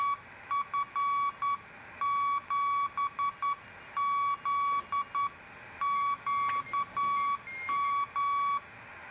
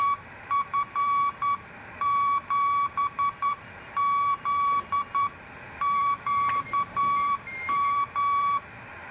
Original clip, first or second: first